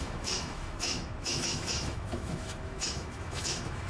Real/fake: fake